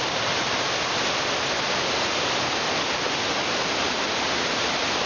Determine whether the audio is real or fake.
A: real